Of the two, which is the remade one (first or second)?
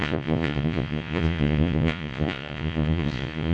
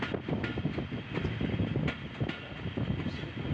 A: first